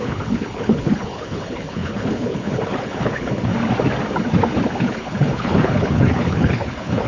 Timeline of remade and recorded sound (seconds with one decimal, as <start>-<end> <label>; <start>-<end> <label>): 0.0-3.5 remade; 3.5-4.8 recorded; 4.8-7.1 remade